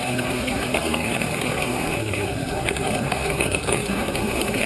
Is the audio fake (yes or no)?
yes